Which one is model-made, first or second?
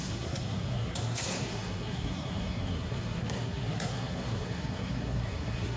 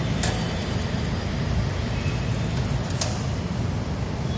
first